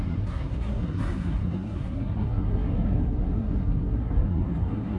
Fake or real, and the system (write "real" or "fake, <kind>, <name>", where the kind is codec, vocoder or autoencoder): fake, codec, SNAC